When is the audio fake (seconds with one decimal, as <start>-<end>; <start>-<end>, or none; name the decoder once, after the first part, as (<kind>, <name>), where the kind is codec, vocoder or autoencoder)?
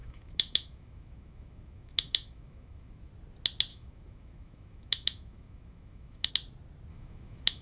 0.0-3.1 (autoencoder, DAC-VAE); 3.7-6.3; 6.9-7.6